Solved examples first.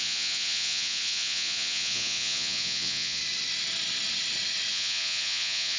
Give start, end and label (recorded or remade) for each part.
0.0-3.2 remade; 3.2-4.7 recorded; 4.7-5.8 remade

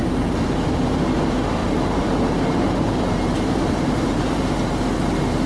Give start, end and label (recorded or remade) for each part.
0.0-0.7 remade; 0.7-1.6 recorded; 1.6-4.7 remade; 4.7-5.5 recorded

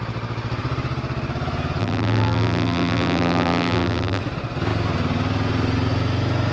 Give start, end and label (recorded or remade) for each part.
0.0-1.8 recorded; 1.8-4.2 remade; 4.2-6.5 recorded

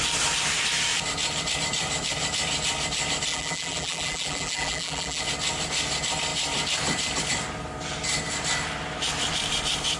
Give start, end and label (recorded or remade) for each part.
0.0-3.3 recorded; 3.3-5.2 remade; 5.2-10.0 recorded

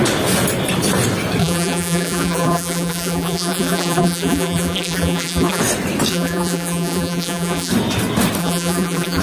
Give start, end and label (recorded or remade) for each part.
0.0-1.4 recorded; 1.4-5.6 remade; 5.6-6.1 recorded; 6.1-7.7 remade; 7.7-8.4 recorded; 8.4-9.2 remade

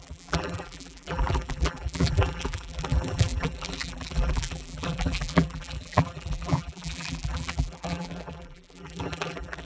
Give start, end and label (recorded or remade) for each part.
0.0-9.7 remade